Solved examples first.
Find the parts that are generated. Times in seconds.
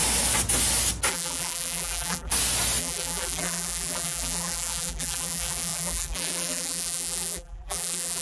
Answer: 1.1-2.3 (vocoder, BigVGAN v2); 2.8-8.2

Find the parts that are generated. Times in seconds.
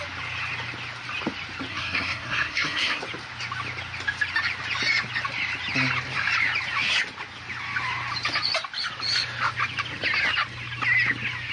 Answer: 1.7-3.0 (codec, SNAC)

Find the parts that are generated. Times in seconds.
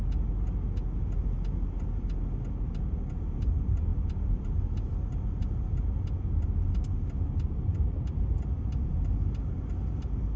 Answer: none